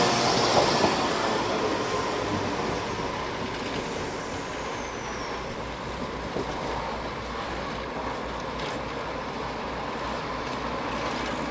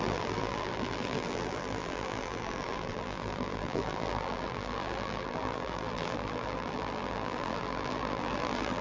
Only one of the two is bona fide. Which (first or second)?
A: first